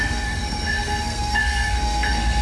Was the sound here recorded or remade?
remade